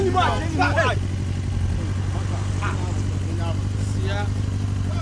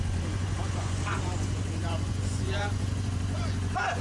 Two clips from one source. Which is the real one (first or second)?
first